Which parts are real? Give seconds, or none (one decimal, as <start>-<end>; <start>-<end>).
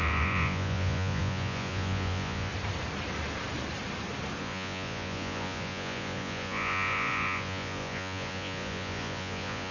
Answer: 2.5-4.4